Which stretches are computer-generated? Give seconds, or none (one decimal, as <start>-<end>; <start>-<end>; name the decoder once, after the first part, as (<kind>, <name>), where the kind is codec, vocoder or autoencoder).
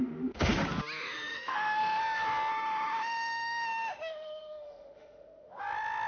0.0-0.5 (autoencoder, DAC-VAE); 1.0-2.0; 2.5-5.6